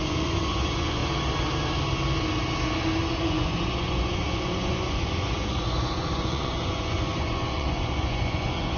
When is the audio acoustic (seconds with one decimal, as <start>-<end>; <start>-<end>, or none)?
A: 1.0-3.1